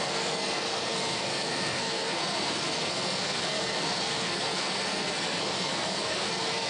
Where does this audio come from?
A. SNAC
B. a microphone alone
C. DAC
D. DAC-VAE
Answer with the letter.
A